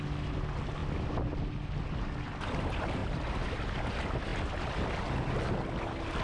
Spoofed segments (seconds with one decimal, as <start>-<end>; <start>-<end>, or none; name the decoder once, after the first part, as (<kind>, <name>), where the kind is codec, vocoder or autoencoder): 3.0-3.6 (vocoder, BigVGAN v2)